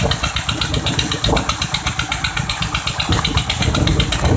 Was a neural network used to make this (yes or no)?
no